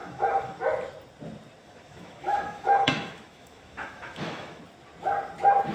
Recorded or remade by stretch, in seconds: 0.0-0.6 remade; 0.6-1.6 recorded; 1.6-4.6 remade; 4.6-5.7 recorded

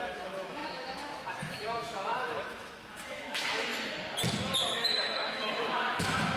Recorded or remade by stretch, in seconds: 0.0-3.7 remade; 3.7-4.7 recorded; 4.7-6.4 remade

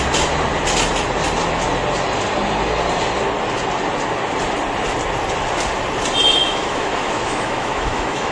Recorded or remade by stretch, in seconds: 0.0-6.4 recorded; 6.4-8.3 remade

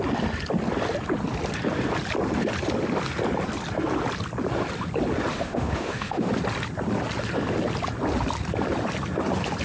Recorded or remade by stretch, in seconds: 0.0-5.3 recorded; 5.3-6.3 remade; 6.3-9.6 recorded